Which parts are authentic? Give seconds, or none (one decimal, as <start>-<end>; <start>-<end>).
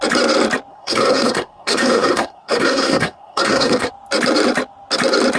0.0-0.7; 3.9-5.4